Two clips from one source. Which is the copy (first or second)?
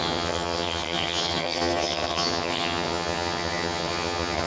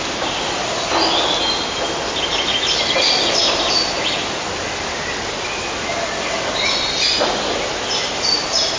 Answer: first